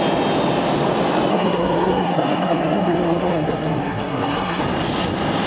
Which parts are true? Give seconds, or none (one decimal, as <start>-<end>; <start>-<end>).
0.0-1.3; 4.6-5.5